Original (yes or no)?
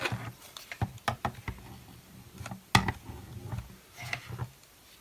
yes